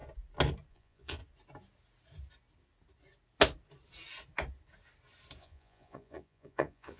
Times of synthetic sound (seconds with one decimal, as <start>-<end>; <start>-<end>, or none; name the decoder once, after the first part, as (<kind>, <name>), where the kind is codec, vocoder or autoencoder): 0.7-1.2 (vocoder, Vocos); 5.4-7.0